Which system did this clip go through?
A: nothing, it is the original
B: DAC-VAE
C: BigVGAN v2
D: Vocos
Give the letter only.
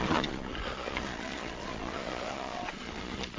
D